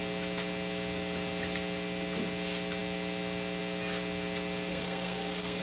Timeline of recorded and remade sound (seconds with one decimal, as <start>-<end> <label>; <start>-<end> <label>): 0.0-4.7 recorded; 4.7-5.6 remade